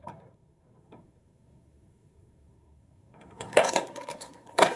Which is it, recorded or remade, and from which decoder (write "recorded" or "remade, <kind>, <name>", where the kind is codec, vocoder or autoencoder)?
remade, codec, SNAC